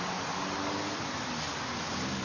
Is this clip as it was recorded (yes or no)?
yes